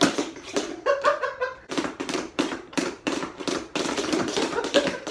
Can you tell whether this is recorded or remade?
remade